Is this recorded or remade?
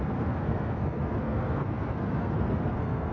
remade